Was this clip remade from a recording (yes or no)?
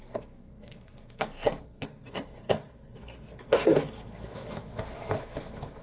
yes